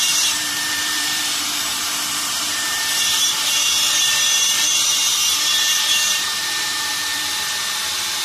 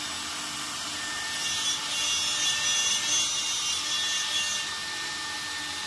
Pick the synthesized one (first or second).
first